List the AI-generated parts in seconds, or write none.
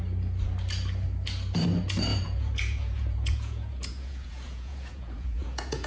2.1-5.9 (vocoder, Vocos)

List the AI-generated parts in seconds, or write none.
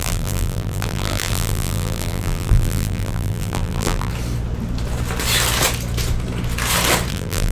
0.0-4.1 (vocoder, BigVGAN v2); 7.1-7.5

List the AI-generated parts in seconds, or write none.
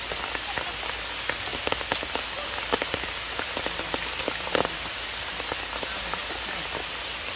none